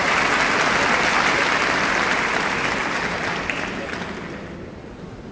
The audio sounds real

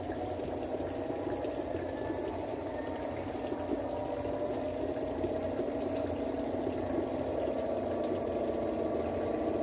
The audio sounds real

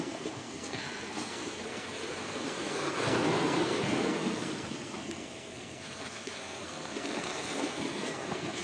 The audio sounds fake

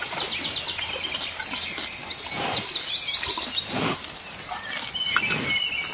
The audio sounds real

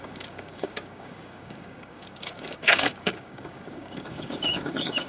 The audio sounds fake